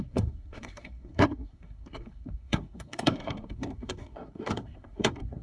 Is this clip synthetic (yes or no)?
yes